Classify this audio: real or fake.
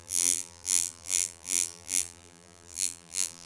fake